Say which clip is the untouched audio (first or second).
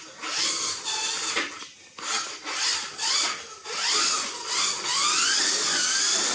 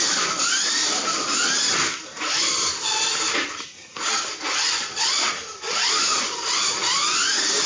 first